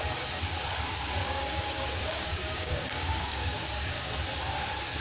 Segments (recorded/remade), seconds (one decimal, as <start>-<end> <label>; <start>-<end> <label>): 0.0-1.2 recorded; 1.2-4.2 remade; 4.2-5.0 recorded